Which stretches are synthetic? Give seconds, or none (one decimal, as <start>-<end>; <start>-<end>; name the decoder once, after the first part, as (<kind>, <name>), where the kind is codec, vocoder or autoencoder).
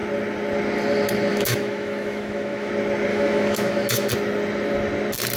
1.3-2.7 (autoencoder, DAC-VAE); 3.1-4.1